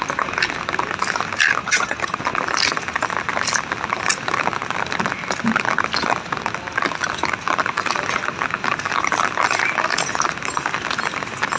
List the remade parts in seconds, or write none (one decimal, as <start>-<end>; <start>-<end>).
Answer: 1.6-2.2